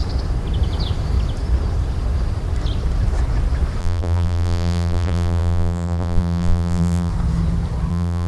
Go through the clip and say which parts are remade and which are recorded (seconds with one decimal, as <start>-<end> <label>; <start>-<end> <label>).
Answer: 0.0-3.8 recorded; 3.8-7.1 remade; 7.1-7.9 recorded; 7.9-8.3 remade